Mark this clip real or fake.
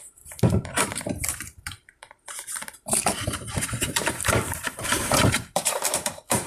fake